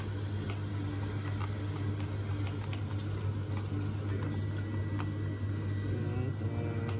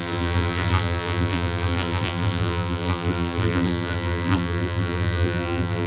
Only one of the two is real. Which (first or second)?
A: first